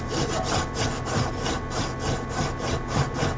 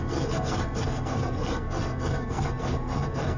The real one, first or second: first